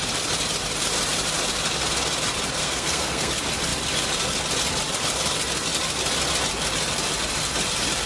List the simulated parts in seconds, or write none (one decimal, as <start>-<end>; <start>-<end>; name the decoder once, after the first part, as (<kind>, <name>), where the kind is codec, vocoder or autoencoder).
2.6-3.3 (codec, SNAC)